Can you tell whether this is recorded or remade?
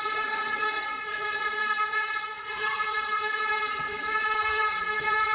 remade